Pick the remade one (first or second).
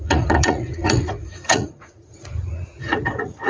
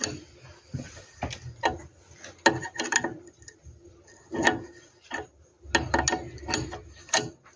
first